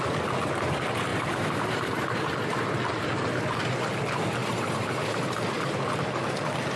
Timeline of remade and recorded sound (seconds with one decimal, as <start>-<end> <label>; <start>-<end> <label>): 0.0-1.1 recorded; 1.1-2.3 remade; 2.3-4.4 recorded; 4.4-5.2 remade; 5.2-6.8 recorded

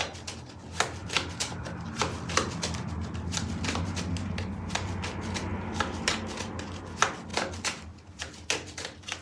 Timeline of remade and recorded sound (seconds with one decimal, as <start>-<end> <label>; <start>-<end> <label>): 0.0-1.0 recorded; 1.0-2.0 remade; 2.0-5.5 recorded; 5.5-6.1 remade; 6.1-9.2 recorded

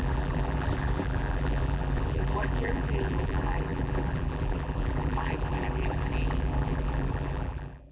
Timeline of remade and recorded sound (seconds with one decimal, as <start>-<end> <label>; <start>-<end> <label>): 0.0-7.9 remade